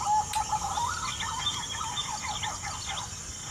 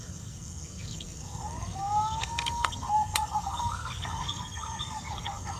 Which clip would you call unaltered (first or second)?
first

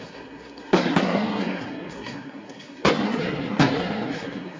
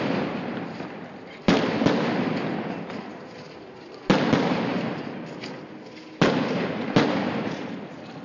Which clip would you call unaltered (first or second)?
second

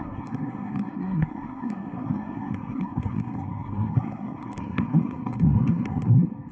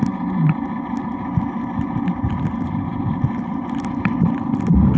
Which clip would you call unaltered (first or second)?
second